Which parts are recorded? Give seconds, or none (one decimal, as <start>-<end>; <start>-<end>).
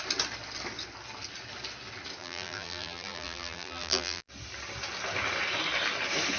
0.0-2.2; 4.3-6.4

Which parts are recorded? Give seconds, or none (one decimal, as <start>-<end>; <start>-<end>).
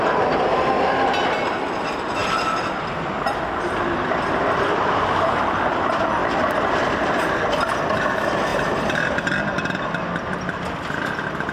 0.0-2.2; 3.1-6.2; 7.4-8.5; 9.2-11.5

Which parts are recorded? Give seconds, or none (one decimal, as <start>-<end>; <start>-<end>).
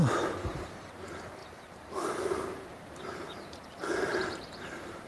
none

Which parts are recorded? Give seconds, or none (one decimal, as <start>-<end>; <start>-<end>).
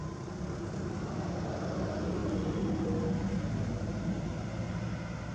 0.0-2.2; 3.3-5.3